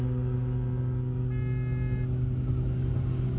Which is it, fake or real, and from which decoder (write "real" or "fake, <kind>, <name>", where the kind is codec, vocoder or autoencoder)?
real